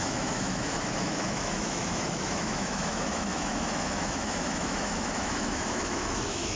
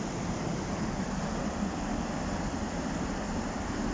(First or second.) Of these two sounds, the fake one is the first